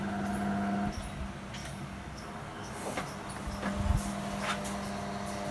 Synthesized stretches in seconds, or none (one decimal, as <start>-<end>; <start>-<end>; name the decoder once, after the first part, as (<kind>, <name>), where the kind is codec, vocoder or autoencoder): 1.6-2.7 (codec, DAC)